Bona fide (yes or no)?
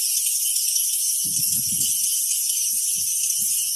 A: yes